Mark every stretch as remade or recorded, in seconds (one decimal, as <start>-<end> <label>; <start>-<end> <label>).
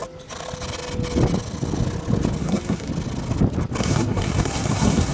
0.0-2.4 recorded; 2.4-2.9 remade; 2.9-3.8 recorded; 3.8-5.1 remade